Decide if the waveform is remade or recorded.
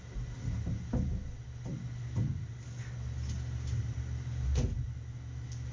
recorded